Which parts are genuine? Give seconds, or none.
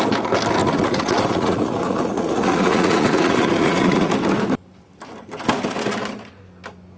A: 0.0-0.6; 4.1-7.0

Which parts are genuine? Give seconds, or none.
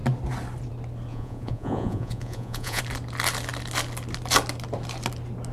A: 0.0-1.1; 2.8-5.5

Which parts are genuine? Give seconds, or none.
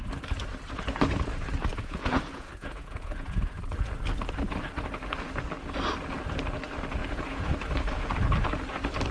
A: 0.0-1.7; 3.6-7.0; 7.5-9.1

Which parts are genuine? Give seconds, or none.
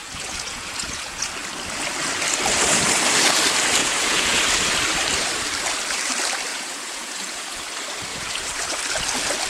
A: 1.3-3.8; 4.4-6.5; 7.6-8.1; 8.8-9.5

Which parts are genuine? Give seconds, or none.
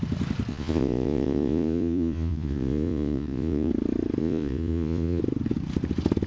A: 0.0-0.5; 3.7-4.2; 5.2-6.3